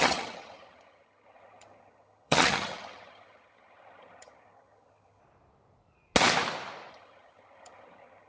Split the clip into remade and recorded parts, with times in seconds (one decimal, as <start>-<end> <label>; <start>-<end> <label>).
0.0-5.2 remade; 5.2-6.9 recorded; 6.9-8.3 remade

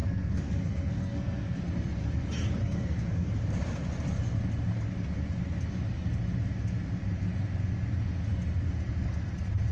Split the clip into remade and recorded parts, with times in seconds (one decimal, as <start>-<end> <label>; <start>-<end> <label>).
0.0-1.6 remade; 1.6-2.6 recorded; 2.6-3.3 remade; 3.3-9.7 recorded

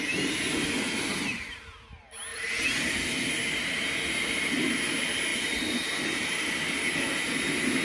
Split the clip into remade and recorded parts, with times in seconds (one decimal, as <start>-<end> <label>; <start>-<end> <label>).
0.0-2.3 recorded; 2.3-2.8 remade; 2.8-5.3 recorded; 5.3-6.7 remade; 6.7-7.8 recorded

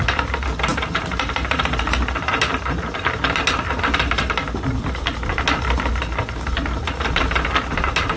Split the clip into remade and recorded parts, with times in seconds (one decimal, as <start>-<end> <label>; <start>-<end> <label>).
0.0-8.2 recorded

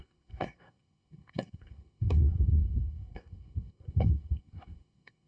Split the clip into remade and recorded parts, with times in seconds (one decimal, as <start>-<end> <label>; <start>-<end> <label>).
0.0-5.3 remade

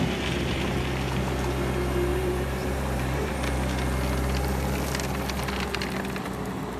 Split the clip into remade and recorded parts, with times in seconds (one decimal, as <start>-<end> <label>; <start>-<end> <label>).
0.0-2.1 recorded; 2.1-3.3 remade; 3.3-6.8 recorded

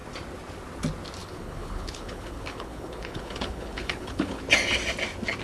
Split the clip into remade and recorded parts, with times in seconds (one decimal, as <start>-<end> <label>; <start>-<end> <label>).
0.0-1.2 recorded; 1.2-4.4 remade; 4.4-5.4 recorded